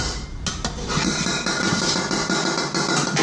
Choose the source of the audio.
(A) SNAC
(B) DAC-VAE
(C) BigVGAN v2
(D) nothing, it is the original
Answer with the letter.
D